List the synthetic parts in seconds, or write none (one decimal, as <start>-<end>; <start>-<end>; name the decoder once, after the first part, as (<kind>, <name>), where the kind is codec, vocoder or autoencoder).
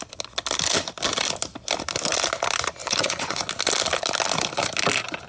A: 2.8-3.4 (vocoder, Vocos)